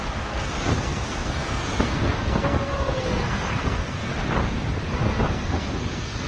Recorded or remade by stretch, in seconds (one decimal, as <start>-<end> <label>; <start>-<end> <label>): 0.0-4.1 remade; 4.1-4.9 recorded; 4.9-6.3 remade